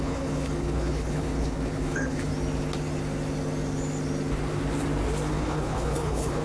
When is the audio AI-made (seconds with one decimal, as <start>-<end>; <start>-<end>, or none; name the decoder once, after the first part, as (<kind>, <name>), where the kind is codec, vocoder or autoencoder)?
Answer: 0.0-2.3 (codec, HILCodec); 5.3-6.4